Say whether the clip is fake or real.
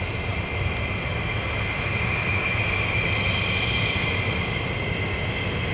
real